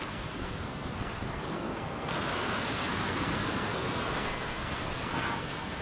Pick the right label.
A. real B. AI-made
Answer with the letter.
B